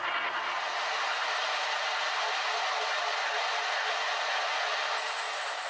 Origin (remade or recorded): recorded